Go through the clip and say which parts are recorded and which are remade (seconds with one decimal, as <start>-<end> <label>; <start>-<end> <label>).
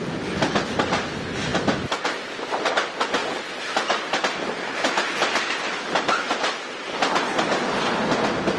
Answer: 0.0-3.2 recorded; 3.2-4.2 remade; 4.2-5.2 recorded; 5.2-6.3 remade; 6.3-8.6 recorded